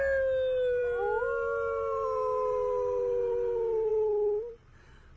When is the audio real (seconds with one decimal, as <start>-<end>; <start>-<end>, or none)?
0.0-5.2